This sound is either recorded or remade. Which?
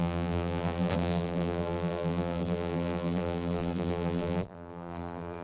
remade